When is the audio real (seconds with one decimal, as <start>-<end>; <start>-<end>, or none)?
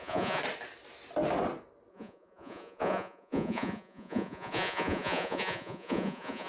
0.4-1.9